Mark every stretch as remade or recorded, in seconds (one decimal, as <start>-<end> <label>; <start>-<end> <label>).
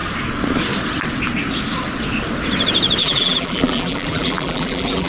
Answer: 0.0-3.0 recorded; 3.0-5.1 remade